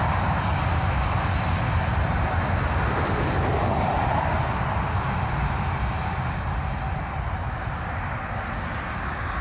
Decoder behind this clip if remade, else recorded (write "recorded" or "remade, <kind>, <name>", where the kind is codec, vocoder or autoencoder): recorded